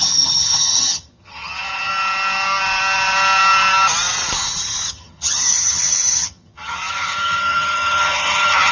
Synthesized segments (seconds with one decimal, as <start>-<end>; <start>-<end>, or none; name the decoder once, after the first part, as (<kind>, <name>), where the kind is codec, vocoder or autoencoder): 0.0-1.9 (vocoder, HiFi-GAN); 4.9-8.7